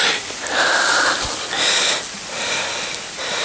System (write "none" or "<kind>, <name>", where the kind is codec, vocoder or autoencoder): none